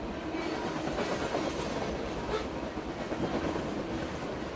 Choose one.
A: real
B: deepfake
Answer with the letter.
A